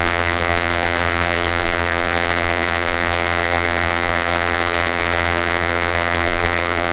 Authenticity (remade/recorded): remade